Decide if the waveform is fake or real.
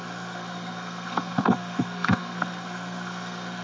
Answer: fake